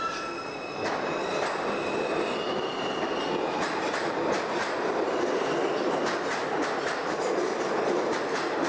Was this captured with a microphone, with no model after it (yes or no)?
yes